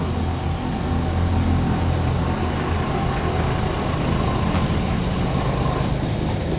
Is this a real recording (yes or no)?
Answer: yes